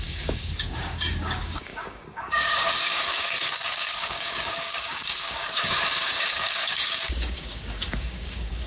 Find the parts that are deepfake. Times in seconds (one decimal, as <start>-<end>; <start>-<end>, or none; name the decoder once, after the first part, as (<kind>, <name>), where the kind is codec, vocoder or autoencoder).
0.0-8.7 (codec, DAC)